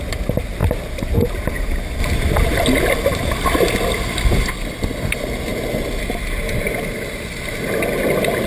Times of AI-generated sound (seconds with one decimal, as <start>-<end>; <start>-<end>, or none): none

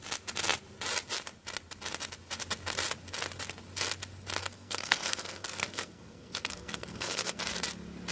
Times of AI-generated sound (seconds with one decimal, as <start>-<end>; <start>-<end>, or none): 4.4-7.4

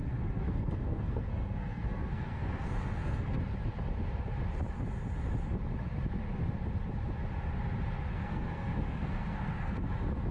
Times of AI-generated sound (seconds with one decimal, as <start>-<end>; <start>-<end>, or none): 0.0-3.4; 8.1-9.9